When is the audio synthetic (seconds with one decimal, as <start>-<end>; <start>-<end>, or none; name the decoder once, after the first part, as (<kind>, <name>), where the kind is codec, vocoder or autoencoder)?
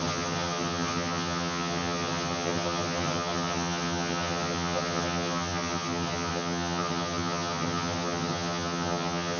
0.0-9.4 (vocoder, HiFi-GAN)